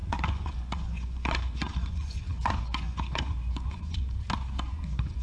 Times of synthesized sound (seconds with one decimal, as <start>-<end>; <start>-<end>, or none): 0.0-4.0; 4.6-5.2